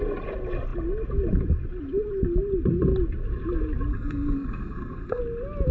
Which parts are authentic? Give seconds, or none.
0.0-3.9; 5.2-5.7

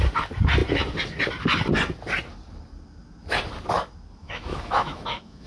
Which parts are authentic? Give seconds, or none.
0.0-4.2

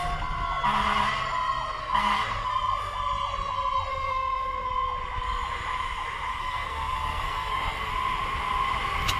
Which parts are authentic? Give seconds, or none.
0.0-1.8; 2.5-3.9; 4.7-6.3; 7.9-9.2